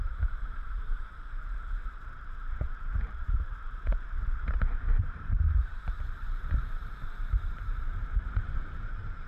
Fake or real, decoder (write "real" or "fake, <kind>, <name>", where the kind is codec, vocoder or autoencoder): fake, vocoder, BigVGAN v2